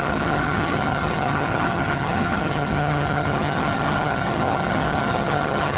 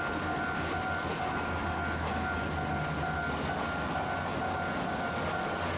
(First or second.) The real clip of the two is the second